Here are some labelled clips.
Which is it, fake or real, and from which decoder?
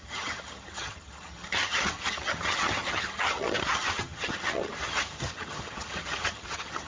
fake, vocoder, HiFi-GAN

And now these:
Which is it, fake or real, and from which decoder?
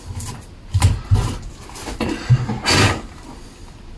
real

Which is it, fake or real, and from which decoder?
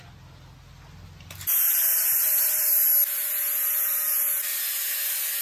real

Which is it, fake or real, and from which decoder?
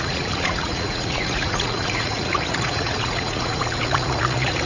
fake, vocoder, Vocos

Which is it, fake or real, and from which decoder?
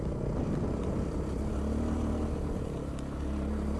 real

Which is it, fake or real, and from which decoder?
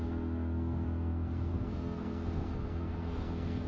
fake, codec, SNAC